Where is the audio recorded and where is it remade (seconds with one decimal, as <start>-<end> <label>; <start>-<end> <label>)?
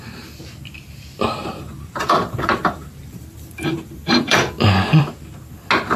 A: 0.0-1.4 recorded; 1.4-4.5 remade; 4.5-6.0 recorded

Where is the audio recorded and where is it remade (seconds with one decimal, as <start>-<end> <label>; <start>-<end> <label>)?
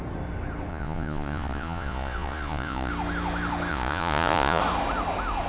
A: 0.0-0.7 recorded; 0.7-2.9 remade; 2.9-3.7 recorded; 3.7-4.6 remade; 4.6-5.5 recorded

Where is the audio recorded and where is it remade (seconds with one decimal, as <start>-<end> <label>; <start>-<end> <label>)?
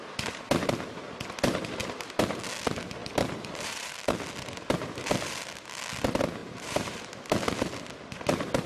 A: 0.0-1.8 recorded; 1.8-2.4 remade; 2.4-3.0 recorded; 3.0-3.9 remade; 3.9-6.4 recorded; 6.4-7.0 remade; 7.0-8.7 recorded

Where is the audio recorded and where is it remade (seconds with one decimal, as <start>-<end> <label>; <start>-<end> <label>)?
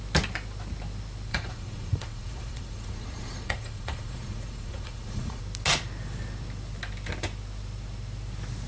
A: 0.0-1.3 recorded; 1.3-5.4 remade; 5.4-8.7 recorded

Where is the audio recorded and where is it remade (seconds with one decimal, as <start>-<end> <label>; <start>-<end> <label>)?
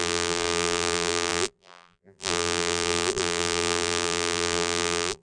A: 0.0-5.2 remade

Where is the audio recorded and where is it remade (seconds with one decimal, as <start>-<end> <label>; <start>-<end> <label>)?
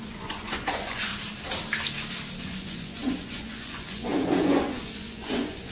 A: 0.0-1.1 remade; 1.1-2.4 recorded; 2.4-5.7 remade